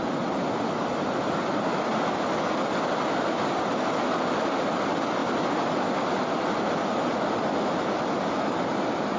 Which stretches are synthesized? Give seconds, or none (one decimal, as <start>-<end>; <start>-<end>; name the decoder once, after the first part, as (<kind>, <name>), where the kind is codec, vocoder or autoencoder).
none